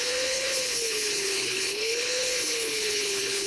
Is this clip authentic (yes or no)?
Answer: no